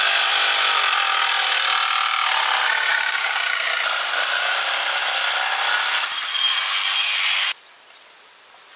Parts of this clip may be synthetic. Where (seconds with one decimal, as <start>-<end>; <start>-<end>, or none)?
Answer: 2.9-3.7